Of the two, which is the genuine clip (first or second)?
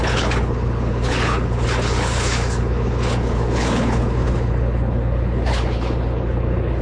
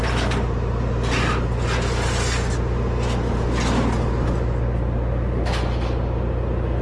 second